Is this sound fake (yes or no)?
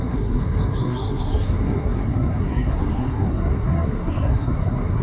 yes